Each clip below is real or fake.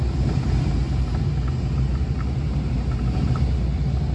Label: real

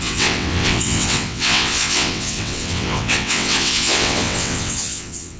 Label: fake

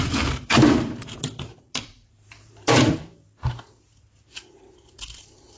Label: fake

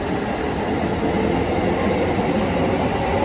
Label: real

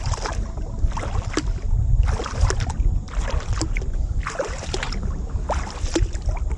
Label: real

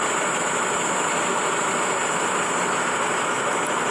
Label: real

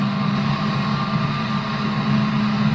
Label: real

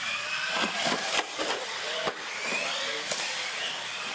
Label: real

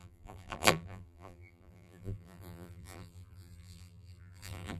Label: fake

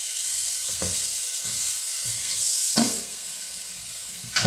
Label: fake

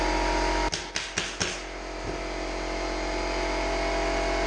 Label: real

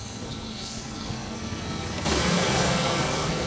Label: fake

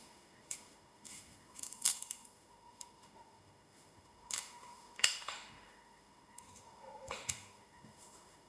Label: fake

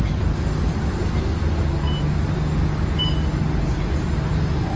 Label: real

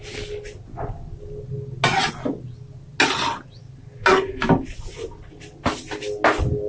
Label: real